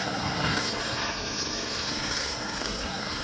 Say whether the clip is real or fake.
fake